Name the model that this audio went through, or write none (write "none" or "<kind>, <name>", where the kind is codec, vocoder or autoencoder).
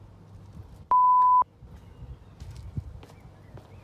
none